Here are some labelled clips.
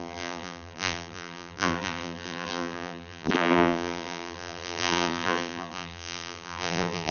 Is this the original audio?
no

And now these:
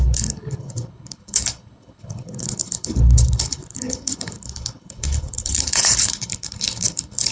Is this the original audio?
no